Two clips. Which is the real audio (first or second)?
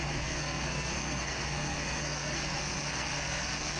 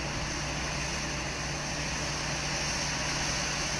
second